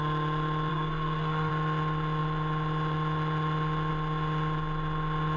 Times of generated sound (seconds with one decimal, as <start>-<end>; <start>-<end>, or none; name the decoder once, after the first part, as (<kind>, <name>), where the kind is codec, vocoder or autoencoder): 0.7-1.5 (codec, SNAC)